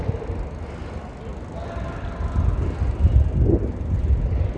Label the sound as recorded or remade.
recorded